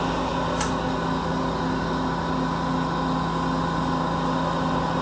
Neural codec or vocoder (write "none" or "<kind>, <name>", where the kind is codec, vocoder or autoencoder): none